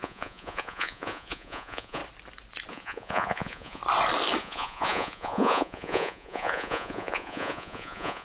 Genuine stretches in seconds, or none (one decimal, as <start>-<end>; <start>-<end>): 2.0-2.7; 3.8-4.4